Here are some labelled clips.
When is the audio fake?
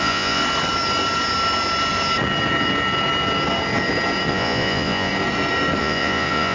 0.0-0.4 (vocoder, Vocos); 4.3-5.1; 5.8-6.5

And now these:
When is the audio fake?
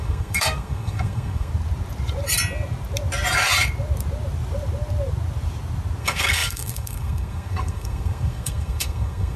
0.0-1.5 (codec, SNAC); 6.0-9.4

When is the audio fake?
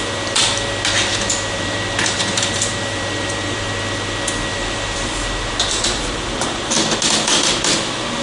1.1-3.7 (vocoder, BigVGAN v2); 4.5-6.7